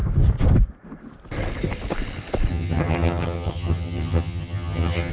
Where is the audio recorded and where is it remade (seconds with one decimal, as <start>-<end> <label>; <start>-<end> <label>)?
0.0-2.5 recorded; 2.5-5.1 remade